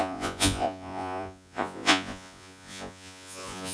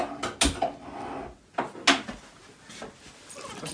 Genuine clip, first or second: second